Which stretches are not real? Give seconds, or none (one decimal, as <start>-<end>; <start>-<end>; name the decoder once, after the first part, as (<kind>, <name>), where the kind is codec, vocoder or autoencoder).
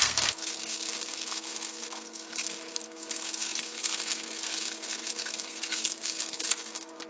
0.0-7.1 (codec, SNAC)